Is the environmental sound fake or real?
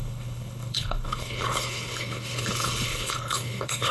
fake